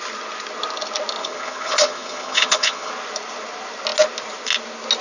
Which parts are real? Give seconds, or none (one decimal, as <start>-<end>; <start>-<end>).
0.0-1.2; 2.9-5.0